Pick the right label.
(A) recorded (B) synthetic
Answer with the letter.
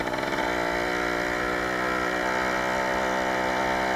A